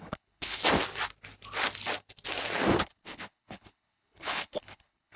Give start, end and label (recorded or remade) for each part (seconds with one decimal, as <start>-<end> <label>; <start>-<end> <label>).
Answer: 0.0-0.6 remade; 0.6-2.8 recorded; 2.8-5.2 remade

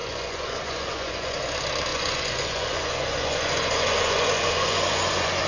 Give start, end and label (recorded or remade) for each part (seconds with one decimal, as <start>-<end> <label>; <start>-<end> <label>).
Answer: 0.0-1.5 remade; 1.5-1.9 recorded; 1.9-5.5 remade

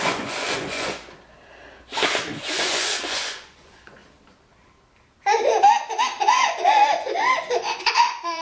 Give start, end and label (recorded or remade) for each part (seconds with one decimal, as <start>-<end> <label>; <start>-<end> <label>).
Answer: 0.0-1.0 remade; 1.0-2.4 recorded; 2.4-4.0 remade; 4.0-6.3 recorded; 6.3-8.4 remade

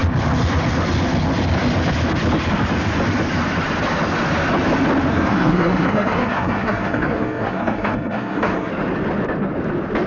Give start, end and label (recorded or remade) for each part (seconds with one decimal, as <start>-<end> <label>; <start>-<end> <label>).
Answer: 0.0-5.1 recorded; 5.1-8.7 remade; 8.7-10.1 recorded

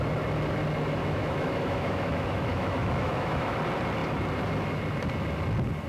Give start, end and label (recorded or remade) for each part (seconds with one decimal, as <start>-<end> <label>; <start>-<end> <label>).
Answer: 0.0-1.0 recorded; 1.0-3.6 remade; 3.6-5.9 recorded

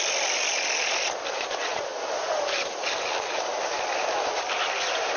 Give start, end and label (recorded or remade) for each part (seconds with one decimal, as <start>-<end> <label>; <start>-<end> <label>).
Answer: 0.0-5.2 recorded